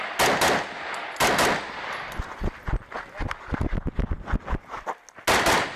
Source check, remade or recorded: recorded